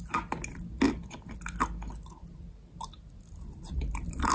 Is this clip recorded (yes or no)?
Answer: yes